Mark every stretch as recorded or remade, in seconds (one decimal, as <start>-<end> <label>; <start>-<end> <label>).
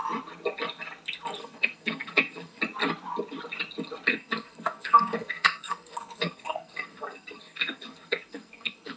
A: 0.0-1.4 recorded; 1.4-2.6 remade; 2.6-4.1 recorded; 4.1-9.0 remade